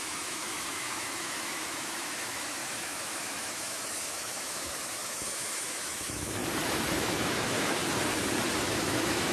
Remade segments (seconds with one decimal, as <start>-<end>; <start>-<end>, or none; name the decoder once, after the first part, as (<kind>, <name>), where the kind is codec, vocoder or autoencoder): 0.0-6.4 (autoencoder, DAC-VAE); 7.0-7.8; 8.8-9.3